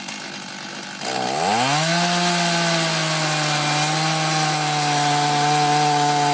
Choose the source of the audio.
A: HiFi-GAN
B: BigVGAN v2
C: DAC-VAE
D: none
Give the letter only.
D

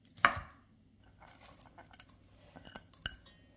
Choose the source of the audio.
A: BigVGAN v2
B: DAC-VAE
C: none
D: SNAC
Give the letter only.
C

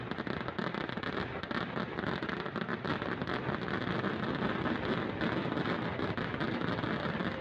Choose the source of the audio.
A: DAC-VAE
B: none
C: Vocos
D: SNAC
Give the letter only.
B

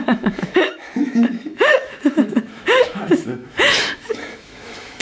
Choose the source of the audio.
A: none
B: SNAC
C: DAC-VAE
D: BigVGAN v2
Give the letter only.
C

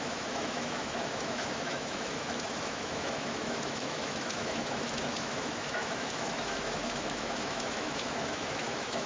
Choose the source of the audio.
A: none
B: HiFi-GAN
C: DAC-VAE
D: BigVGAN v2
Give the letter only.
C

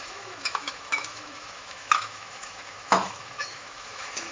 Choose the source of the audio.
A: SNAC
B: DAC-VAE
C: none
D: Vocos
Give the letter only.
B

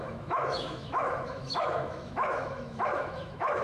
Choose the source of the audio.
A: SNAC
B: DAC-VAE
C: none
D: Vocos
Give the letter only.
B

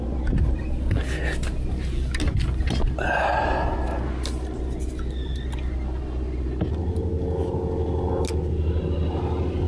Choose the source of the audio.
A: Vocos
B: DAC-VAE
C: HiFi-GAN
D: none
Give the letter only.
D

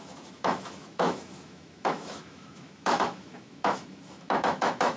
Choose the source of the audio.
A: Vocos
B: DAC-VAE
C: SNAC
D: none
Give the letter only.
B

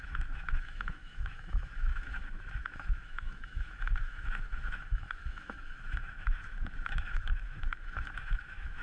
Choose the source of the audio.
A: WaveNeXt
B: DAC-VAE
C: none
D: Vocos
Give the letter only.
B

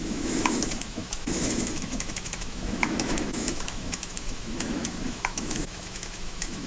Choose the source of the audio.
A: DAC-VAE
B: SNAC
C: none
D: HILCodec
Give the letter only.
A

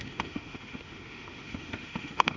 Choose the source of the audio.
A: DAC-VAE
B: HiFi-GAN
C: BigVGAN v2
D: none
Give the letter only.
A